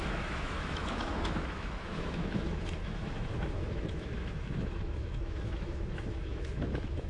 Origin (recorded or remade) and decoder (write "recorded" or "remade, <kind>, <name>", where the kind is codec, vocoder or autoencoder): remade, autoencoder, DAC-VAE